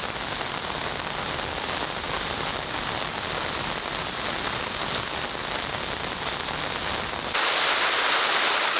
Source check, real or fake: real